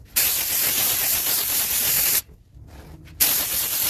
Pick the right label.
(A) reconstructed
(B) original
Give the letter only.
A